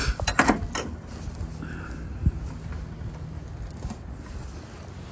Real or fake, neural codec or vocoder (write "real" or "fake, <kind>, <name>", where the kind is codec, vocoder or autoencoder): real